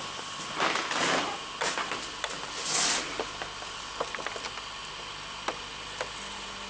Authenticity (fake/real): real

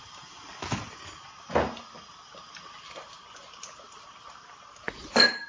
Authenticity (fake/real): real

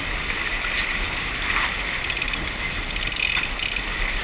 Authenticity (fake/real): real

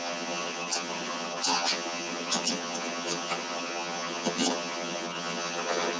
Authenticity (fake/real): fake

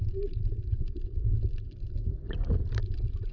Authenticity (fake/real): real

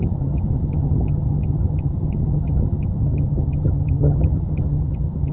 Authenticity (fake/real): fake